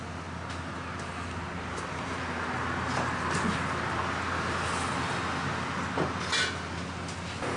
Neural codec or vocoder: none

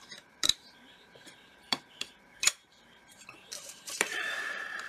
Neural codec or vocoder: vocoder, BigVGAN v2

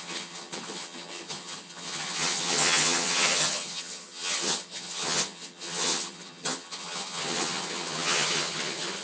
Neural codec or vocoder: vocoder, HiFi-GAN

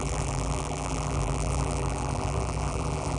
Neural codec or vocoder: vocoder, BigVGAN v2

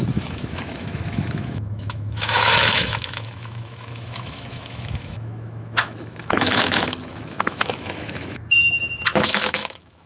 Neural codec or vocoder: autoencoder, DAC-VAE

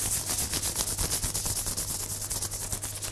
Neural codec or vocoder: none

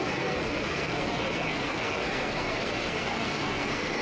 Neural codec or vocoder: codec, SNAC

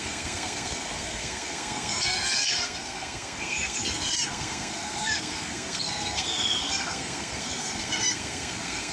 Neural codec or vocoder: codec, SNAC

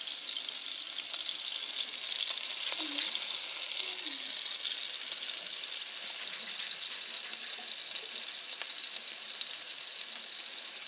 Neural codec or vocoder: none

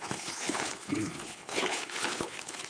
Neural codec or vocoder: codec, HILCodec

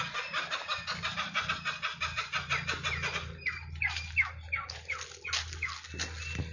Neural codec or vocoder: none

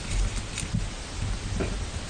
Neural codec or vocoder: none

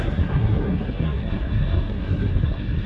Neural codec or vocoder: codec, SNAC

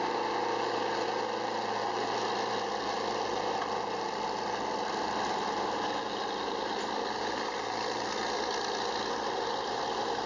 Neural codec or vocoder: none